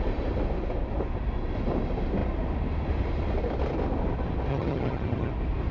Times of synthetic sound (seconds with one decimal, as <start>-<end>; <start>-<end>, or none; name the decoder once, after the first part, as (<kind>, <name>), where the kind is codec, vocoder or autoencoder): 4.5-5.3 (vocoder, HiFi-GAN)